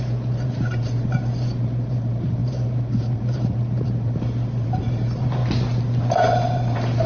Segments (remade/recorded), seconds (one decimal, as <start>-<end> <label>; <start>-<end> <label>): 0.0-5.4 remade; 5.4-6.2 recorded; 6.2-7.1 remade